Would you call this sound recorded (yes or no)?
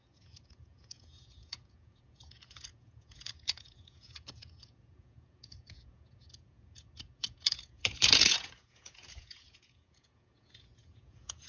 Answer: no